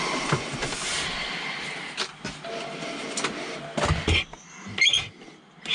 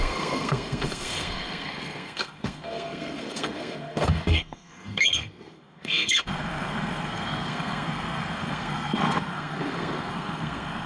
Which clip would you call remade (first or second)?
second